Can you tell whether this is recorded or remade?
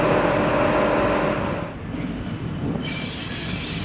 recorded